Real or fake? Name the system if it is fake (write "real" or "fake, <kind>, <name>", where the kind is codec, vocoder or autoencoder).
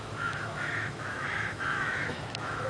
fake, autoencoder, DAC-VAE